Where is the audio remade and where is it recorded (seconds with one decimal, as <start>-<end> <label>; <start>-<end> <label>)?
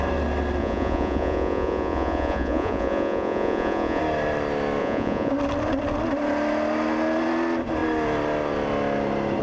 0.0-0.6 recorded; 0.6-4.0 remade; 4.0-4.8 recorded; 4.8-5.3 remade; 5.3-9.4 recorded